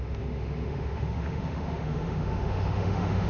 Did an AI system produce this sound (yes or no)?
yes